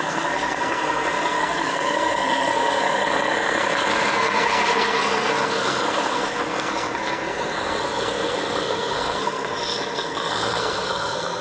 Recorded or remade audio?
remade